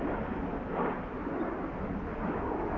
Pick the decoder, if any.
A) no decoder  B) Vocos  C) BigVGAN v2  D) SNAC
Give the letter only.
A